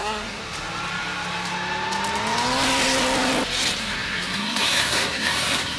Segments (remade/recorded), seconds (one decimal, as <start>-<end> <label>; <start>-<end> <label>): 0.0-0.4 remade; 0.4-3.8 recorded; 3.8-5.8 remade